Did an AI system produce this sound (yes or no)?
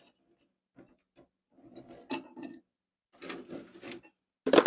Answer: no